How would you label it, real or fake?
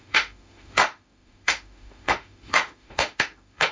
fake